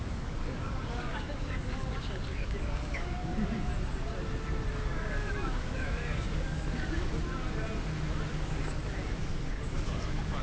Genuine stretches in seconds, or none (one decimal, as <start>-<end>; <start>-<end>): 3.7-4.7; 7.1-8.3